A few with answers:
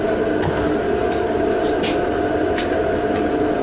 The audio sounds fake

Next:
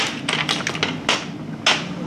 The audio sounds real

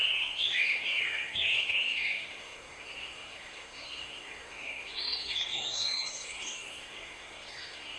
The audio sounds fake